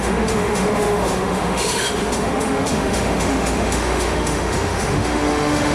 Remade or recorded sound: remade